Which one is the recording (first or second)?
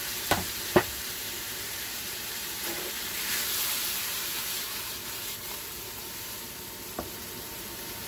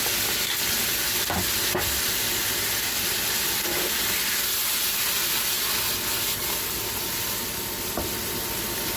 second